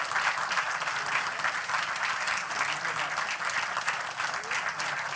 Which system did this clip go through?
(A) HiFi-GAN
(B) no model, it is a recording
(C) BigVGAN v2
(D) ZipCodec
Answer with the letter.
B